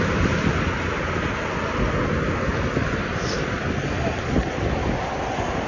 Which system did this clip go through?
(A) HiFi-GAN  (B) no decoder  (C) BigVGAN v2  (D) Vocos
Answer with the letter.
B